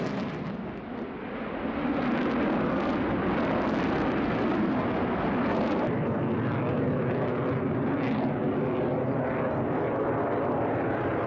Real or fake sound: real